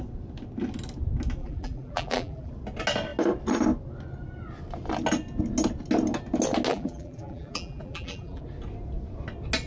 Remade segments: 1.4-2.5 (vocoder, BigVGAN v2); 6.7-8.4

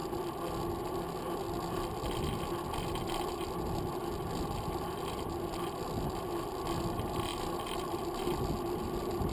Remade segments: none